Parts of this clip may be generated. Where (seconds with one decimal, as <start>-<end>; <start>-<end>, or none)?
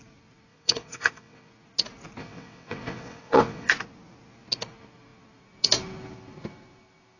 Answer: 0.5-1.5; 2.2-3.7